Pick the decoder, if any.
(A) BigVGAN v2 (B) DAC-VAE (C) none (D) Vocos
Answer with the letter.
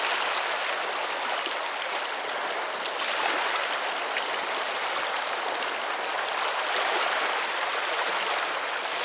C